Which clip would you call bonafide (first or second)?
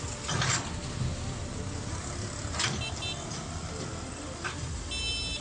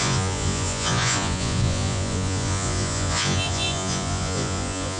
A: first